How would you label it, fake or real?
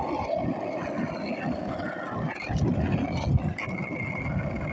real